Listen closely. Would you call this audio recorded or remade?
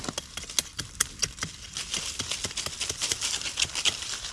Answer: recorded